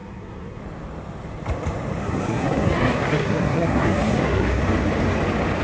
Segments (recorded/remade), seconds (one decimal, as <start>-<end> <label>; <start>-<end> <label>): 0.0-0.6 remade; 0.6-2.0 recorded; 2.0-4.6 remade; 4.6-5.6 recorded